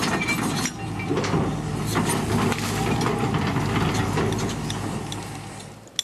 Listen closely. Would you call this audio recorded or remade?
recorded